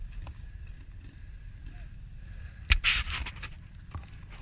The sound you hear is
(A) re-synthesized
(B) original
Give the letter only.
B